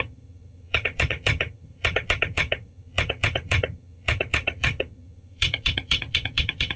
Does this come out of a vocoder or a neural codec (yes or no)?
yes